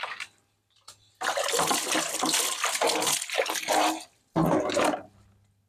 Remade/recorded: recorded